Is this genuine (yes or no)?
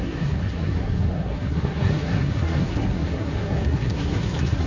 no